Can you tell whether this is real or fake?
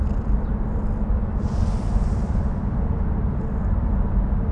fake